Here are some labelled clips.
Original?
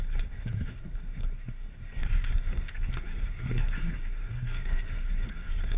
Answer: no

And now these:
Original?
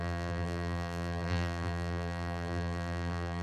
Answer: no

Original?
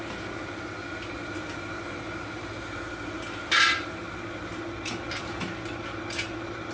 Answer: yes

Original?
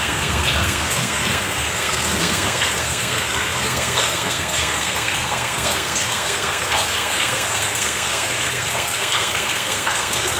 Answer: no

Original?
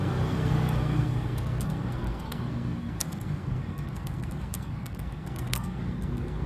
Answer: no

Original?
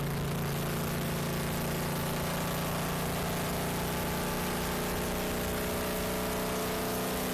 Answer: yes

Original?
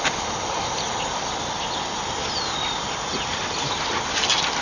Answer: yes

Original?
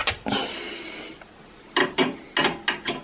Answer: yes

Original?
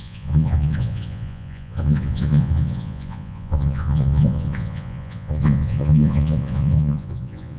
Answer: no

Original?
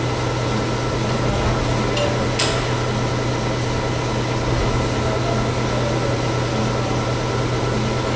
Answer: yes